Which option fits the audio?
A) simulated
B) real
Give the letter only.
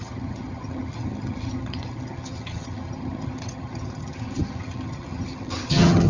A